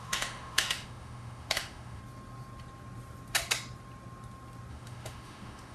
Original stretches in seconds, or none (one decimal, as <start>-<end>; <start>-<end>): 2.0-4.7